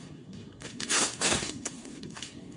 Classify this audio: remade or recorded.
remade